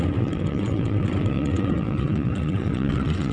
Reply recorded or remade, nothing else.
remade